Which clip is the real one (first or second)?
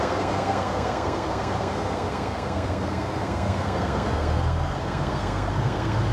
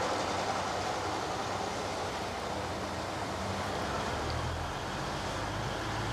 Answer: second